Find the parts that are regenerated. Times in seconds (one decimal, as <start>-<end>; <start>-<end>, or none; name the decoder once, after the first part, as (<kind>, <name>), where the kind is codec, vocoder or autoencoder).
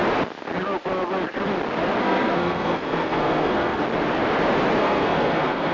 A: 2.0-3.8 (codec, SNAC); 4.8-5.7